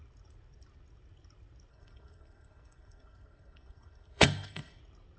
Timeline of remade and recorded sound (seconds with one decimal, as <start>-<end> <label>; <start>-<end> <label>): 0.0-1.7 recorded; 1.7-4.8 remade; 4.8-5.2 recorded